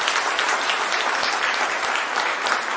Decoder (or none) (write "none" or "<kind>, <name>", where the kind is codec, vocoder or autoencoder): none